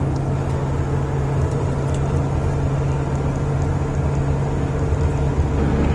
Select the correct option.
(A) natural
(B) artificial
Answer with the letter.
A